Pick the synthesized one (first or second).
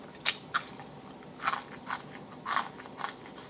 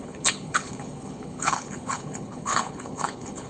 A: second